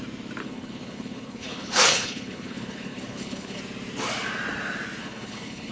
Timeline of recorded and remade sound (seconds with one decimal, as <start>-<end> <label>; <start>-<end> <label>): 0.0-0.4 recorded; 0.4-3.6 remade; 3.6-5.0 recorded; 5.0-5.7 remade